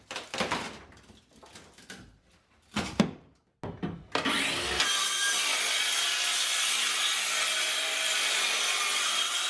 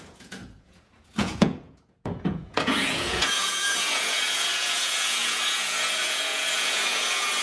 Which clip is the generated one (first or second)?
second